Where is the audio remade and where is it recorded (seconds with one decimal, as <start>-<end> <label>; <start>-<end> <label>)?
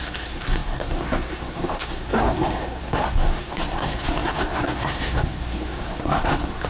0.0-6.7 remade